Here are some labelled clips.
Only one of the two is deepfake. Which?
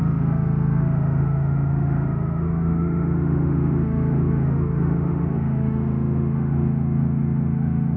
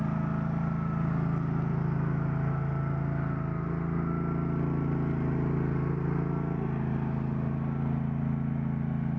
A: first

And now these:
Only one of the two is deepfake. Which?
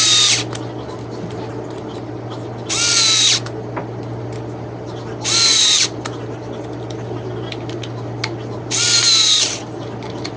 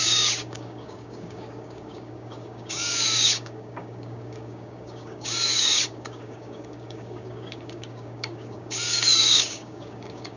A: second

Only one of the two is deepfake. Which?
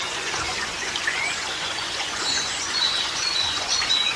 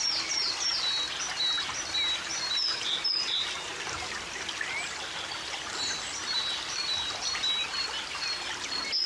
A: first